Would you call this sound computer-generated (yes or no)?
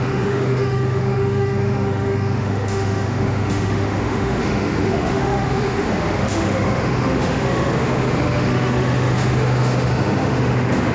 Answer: yes